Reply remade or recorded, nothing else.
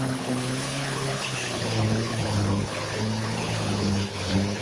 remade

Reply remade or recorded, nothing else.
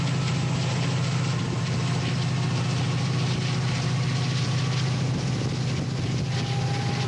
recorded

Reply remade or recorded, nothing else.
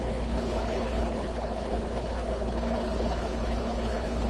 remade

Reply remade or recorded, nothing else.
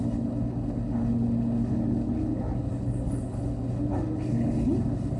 remade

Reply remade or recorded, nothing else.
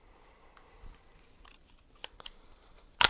recorded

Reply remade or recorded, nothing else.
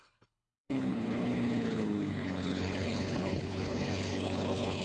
remade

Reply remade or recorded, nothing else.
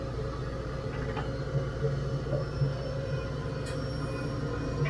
recorded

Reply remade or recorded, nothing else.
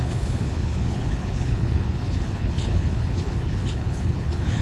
remade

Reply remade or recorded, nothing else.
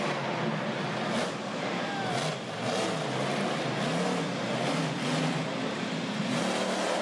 recorded